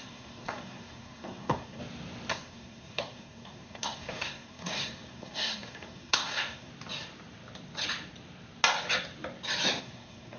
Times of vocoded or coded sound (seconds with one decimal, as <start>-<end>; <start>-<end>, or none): 0.0-1.8; 2.3-6.7; 9.8-10.4